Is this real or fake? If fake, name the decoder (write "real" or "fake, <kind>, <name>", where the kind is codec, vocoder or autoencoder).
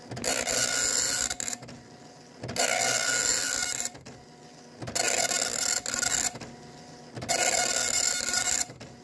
real